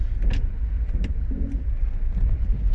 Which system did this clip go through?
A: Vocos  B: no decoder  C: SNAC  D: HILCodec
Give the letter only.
B